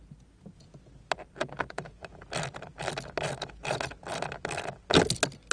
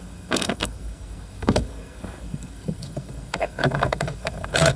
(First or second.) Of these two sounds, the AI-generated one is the second